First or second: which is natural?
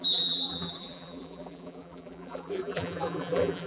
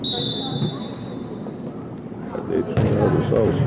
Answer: second